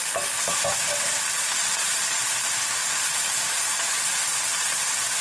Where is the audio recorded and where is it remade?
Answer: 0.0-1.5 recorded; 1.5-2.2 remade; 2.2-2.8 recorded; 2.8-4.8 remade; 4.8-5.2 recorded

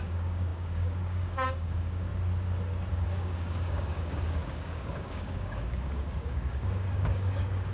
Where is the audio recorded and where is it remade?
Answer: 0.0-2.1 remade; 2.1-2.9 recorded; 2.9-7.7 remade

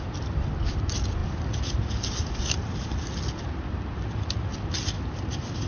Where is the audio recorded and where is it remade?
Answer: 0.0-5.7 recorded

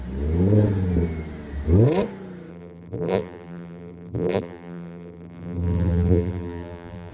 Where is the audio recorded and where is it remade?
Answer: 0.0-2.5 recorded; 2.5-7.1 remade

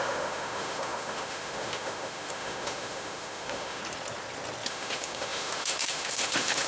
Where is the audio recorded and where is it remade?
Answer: 0.0-3.8 remade; 3.8-4.7 recorded; 4.7-6.7 remade